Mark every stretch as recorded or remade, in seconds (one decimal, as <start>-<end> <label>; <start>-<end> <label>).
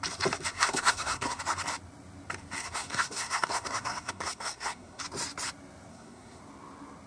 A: 0.0-0.5 recorded; 0.5-1.4 remade; 1.4-2.6 recorded; 2.6-5.0 remade; 5.0-5.9 recorded; 5.9-6.4 remade; 6.4-7.1 recorded